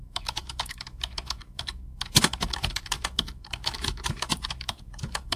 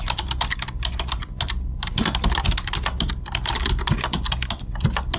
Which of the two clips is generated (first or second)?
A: first